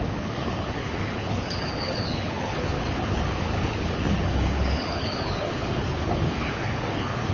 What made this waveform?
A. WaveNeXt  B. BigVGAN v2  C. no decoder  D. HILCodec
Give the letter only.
D